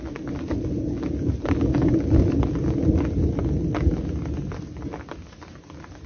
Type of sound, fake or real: real